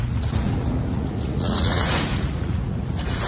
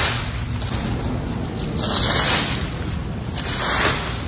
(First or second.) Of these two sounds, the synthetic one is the first